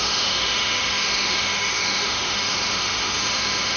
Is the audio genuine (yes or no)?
no